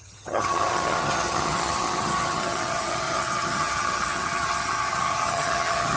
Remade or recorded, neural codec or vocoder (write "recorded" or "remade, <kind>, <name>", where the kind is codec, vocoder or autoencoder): remade, vocoder, HiFi-GAN